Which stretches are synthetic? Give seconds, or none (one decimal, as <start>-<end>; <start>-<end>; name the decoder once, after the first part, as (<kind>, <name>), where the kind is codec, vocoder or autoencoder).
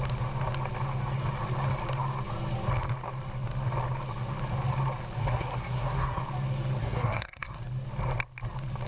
5.2-6.2 (codec, SNAC); 6.8-7.6